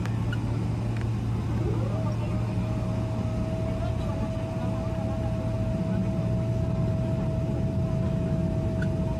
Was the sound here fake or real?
real